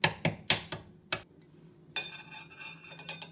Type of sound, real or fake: real